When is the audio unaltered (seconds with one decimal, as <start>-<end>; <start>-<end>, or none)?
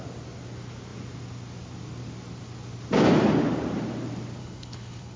0.0-4.4